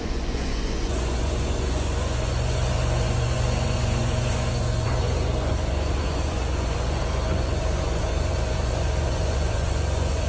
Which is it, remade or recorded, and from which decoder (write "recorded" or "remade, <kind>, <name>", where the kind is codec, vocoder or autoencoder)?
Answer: remade, vocoder, Vocos